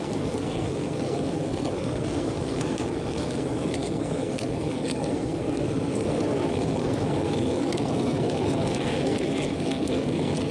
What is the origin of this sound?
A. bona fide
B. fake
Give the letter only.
B